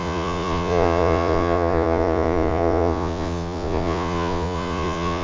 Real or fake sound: fake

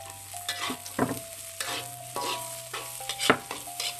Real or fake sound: real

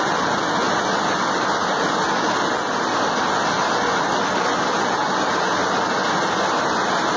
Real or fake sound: real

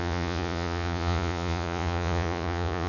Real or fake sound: fake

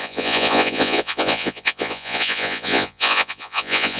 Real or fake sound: fake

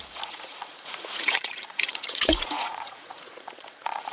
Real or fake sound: fake